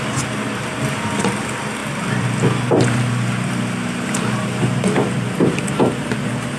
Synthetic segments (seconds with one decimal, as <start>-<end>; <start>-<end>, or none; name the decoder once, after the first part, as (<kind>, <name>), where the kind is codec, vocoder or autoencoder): none